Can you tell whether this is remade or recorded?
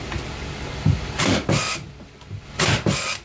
remade